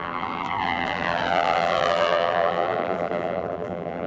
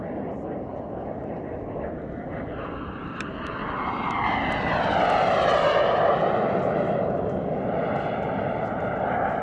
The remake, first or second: first